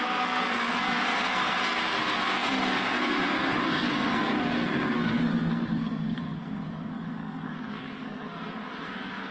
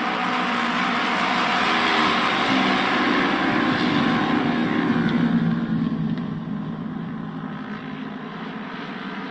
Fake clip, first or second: first